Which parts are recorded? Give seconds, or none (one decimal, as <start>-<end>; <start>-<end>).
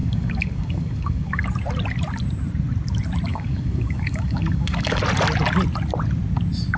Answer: 1.5-3.3; 5.0-6.8